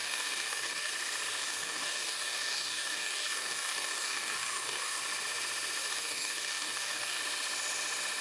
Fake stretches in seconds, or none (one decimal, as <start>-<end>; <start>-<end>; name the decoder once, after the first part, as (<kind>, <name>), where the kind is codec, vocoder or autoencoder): 0.0-0.9 (codec, DAC); 1.4-5.0; 5.8-7.2